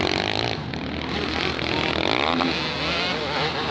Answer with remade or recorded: recorded